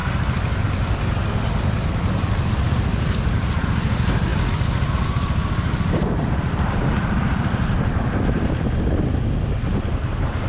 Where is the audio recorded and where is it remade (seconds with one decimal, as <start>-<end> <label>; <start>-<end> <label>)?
0.0-0.6 remade; 0.6-10.5 recorded